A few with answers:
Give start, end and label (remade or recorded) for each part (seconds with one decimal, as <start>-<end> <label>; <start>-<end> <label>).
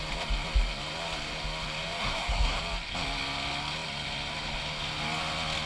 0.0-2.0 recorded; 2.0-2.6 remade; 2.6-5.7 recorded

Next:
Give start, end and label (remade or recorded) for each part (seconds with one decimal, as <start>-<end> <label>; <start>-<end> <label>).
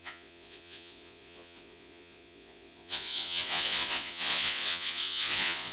0.0-5.7 remade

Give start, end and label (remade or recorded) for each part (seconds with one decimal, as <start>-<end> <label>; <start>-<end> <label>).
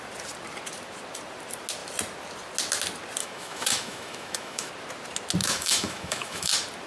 0.0-3.2 recorded; 3.2-4.7 remade; 4.7-5.4 recorded; 5.4-6.5 remade; 6.5-6.9 recorded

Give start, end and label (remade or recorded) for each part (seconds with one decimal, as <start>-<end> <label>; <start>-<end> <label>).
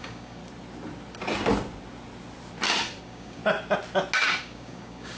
0.0-0.4 remade; 0.4-3.0 recorded; 3.0-3.4 remade; 3.4-4.4 recorded; 4.4-5.2 remade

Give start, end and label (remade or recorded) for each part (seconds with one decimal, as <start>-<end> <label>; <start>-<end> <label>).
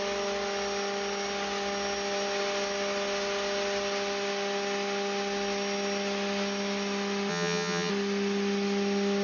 0.0-7.3 recorded; 7.3-7.9 remade; 7.9-9.2 recorded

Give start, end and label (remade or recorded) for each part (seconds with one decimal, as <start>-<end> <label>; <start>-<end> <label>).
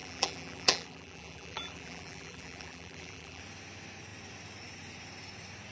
0.0-3.4 remade; 3.4-5.7 recorded